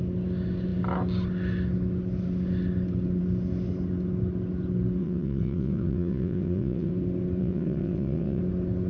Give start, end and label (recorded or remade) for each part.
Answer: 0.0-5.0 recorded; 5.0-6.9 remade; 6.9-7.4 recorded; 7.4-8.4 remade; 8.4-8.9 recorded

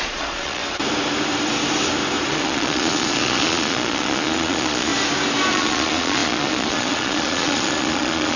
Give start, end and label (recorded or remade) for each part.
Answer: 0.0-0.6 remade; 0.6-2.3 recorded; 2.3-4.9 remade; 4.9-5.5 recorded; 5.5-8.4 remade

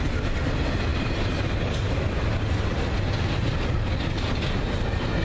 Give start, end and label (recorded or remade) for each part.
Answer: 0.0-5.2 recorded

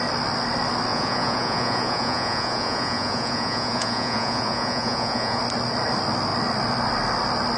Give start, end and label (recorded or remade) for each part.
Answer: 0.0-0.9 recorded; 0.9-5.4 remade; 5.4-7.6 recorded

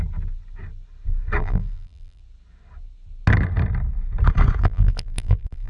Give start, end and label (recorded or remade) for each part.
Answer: 0.0-1.4 recorded; 1.4-2.2 remade; 2.2-4.6 recorded; 4.6-5.7 remade